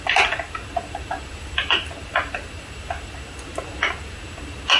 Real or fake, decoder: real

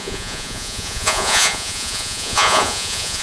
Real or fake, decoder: fake, vocoder, Vocos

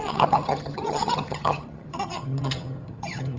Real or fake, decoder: fake, vocoder, HiFi-GAN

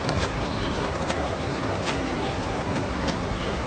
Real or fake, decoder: fake, codec, SNAC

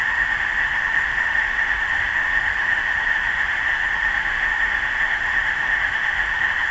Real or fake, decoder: fake, autoencoder, DAC-VAE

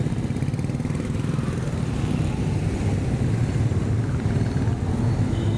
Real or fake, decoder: real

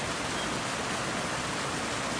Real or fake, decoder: real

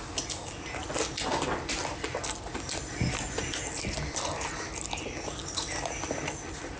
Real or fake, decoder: real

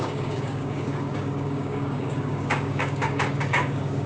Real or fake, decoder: fake, codec, DAC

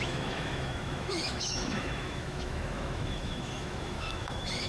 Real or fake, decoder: fake, autoencoder, DAC-VAE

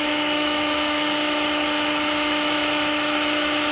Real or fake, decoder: fake, autoencoder, DAC-VAE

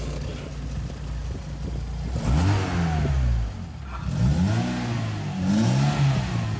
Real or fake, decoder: real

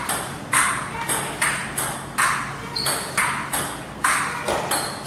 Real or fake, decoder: real